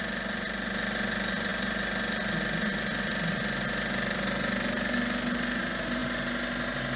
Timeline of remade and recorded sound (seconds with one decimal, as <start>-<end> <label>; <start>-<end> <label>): 0.0-7.0 recorded